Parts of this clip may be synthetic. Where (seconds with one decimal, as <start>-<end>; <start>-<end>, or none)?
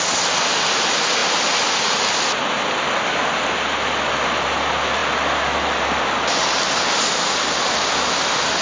none